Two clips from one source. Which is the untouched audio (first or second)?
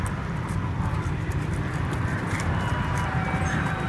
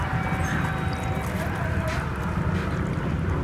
second